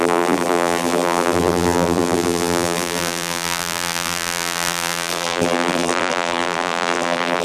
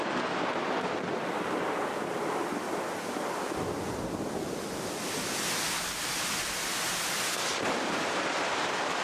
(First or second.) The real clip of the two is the second